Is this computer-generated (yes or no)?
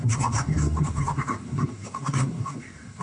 yes